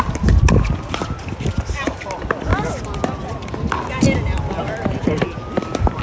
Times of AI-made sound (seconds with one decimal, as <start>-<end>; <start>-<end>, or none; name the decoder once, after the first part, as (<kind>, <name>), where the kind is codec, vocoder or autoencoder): none